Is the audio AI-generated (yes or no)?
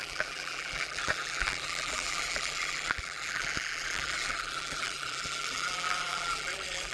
yes